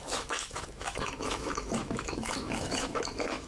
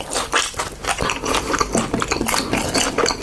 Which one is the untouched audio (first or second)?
second